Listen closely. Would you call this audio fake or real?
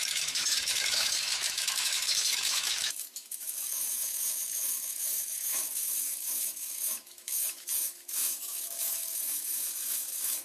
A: fake